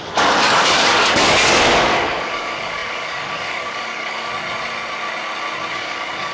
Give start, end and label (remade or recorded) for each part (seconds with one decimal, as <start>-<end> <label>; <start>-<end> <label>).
0.0-4.3 remade; 4.3-5.7 recorded; 5.7-6.3 remade